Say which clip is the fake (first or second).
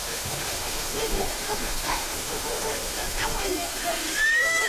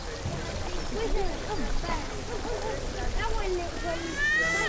first